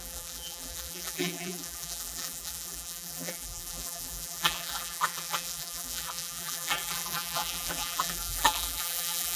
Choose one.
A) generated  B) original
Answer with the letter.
A